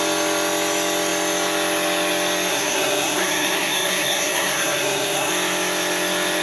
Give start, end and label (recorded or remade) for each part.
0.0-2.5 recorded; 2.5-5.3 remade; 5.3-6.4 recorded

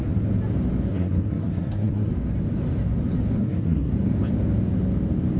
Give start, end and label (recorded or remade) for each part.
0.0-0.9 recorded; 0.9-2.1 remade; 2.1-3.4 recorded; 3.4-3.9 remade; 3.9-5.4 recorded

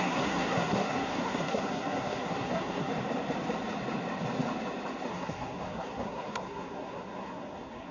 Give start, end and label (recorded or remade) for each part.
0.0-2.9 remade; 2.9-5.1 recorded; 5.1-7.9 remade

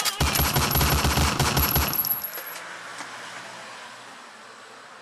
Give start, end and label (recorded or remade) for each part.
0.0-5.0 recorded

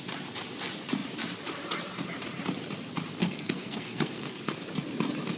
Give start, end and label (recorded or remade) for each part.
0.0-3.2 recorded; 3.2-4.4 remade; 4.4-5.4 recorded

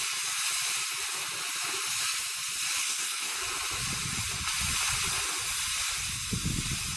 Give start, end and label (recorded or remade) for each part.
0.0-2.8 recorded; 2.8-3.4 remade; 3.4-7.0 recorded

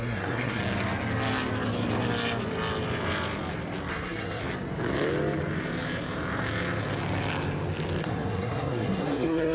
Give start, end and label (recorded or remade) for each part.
0.0-0.6 remade; 0.6-3.9 recorded; 3.9-4.4 remade; 4.4-8.0 recorded; 8.0-9.5 remade